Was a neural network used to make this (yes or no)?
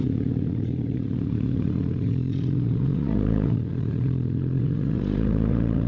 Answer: yes